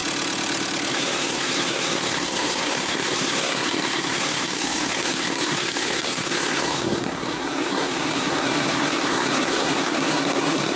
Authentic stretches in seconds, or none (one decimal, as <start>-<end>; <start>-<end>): 0.0-0.9